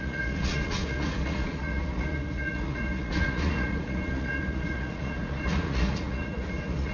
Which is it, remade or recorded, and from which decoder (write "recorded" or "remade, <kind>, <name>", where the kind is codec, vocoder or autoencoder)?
remade, vocoder, Vocos